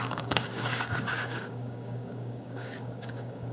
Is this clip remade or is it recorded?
remade